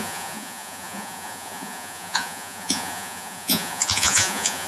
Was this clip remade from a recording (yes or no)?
yes